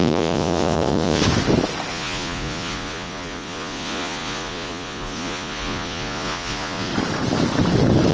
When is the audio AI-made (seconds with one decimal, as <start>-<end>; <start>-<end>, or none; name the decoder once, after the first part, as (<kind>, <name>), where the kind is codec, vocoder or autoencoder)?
0.0-1.2 (vocoder, Vocos); 1.9-6.9